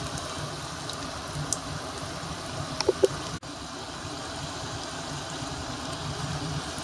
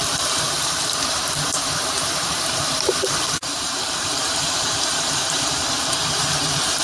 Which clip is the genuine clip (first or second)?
first